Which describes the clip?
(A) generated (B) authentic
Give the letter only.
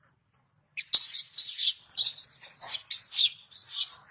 B